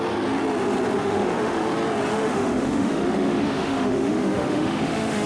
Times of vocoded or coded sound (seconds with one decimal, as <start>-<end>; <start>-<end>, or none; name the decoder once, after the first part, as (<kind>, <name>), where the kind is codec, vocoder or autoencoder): 1.0-1.7 (autoencoder, DAC-VAE); 2.1-5.3

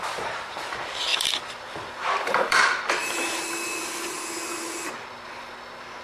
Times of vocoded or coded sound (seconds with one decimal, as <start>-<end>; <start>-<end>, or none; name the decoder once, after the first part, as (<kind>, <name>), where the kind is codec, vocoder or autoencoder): 1.1-4.0 (vocoder, BigVGAN v2)

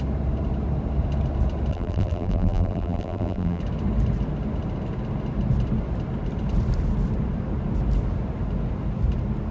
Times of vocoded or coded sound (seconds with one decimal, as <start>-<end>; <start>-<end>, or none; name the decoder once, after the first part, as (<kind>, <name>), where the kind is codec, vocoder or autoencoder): 1.7-3.6 (vocoder, BigVGAN v2)

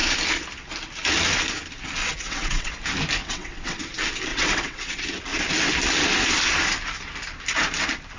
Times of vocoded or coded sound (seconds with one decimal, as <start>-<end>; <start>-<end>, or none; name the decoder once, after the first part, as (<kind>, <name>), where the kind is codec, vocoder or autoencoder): 2.0-2.7 (vocoder, WaveNeXt); 3.2-3.8; 4.3-5.0